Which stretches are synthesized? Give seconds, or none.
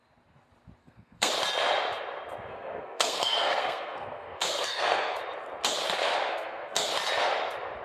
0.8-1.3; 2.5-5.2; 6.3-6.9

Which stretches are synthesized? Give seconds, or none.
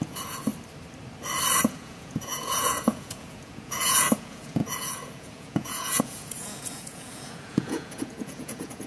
0.0-0.5; 1.6-8.9